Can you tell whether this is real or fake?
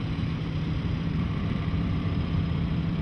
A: fake